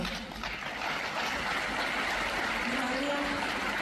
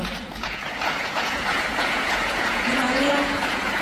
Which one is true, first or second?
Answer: first